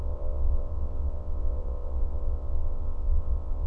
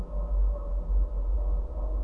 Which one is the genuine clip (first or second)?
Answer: second